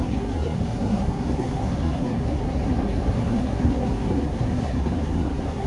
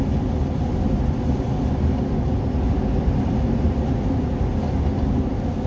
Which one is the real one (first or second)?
second